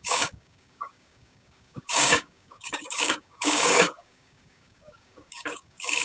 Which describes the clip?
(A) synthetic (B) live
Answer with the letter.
A